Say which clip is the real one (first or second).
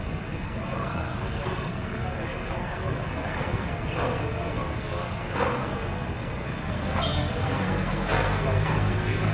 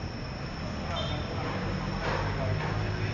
second